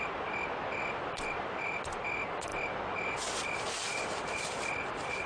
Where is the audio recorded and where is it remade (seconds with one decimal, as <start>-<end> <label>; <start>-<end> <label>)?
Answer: 0.0-2.5 recorded; 2.5-5.3 remade